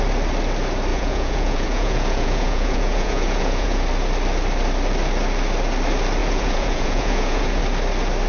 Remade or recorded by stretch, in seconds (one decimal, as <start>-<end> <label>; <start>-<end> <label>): 0.0-0.9 recorded; 0.9-3.8 remade; 3.8-6.2 recorded; 6.2-7.6 remade; 7.6-8.3 recorded